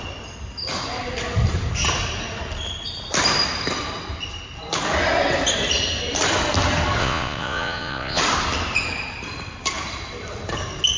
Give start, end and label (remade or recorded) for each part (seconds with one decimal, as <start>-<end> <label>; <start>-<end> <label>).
0.0-7.0 recorded; 7.0-8.2 remade; 8.2-11.0 recorded